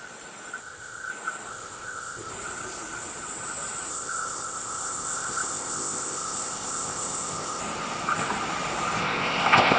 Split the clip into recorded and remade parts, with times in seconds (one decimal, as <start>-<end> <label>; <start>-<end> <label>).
0.0-0.6 recorded; 0.6-1.1 remade; 1.1-1.5 recorded; 1.5-2.3 remade; 2.3-3.9 recorded; 3.9-7.6 remade; 7.6-9.0 recorded; 9.0-9.8 remade